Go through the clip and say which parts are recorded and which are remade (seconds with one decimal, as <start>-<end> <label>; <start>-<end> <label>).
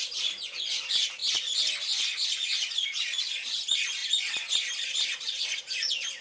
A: 0.0-1.2 remade; 1.2-1.9 recorded; 1.9-6.2 remade